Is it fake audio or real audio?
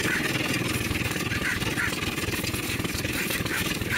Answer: real